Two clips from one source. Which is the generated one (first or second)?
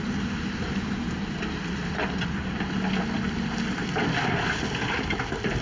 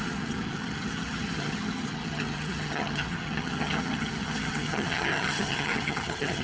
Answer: second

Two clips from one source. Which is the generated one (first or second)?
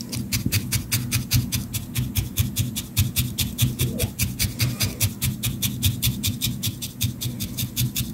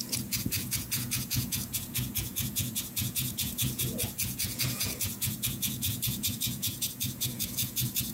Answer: second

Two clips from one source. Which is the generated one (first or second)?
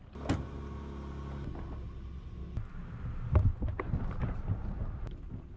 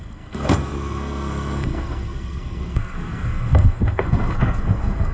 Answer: second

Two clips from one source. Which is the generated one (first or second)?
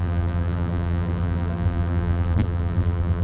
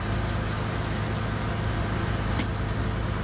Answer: first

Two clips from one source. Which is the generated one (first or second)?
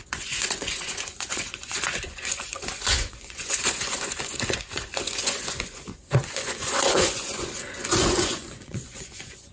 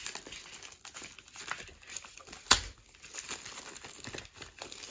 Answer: first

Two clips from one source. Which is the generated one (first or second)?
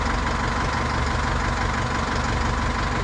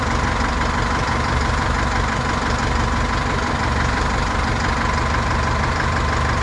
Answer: second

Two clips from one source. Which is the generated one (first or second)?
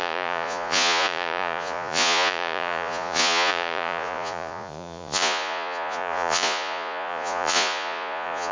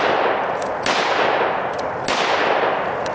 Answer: first